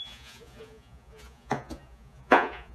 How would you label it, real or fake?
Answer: fake